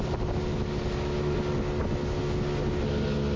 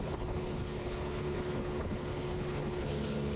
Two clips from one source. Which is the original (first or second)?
first